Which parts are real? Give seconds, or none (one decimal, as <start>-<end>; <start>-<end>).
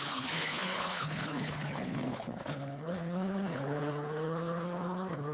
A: none